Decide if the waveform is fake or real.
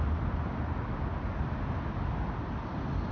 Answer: real